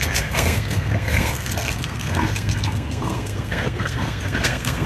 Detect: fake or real fake